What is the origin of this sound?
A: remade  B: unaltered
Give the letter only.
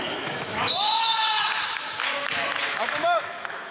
A